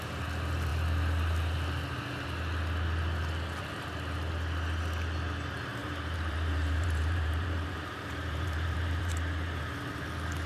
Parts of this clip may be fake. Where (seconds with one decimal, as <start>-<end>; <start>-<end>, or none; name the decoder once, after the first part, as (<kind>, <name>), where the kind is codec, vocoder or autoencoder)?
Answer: 5.8-9.6 (vocoder, BigVGAN v2)